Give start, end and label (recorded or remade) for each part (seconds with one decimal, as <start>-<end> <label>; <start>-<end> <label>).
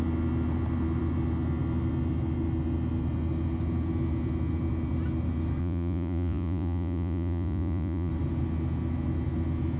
0.0-5.6 recorded; 5.6-8.1 remade; 8.1-9.8 recorded